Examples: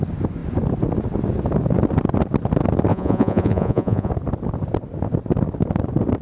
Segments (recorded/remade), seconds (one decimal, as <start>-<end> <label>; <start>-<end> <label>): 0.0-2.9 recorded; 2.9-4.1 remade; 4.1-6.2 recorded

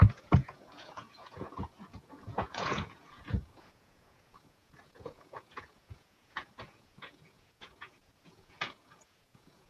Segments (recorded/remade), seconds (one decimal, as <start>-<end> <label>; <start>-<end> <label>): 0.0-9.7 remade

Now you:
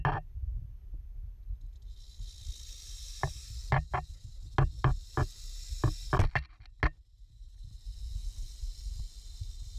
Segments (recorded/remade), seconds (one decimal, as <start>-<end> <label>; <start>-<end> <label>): 0.0-9.8 recorded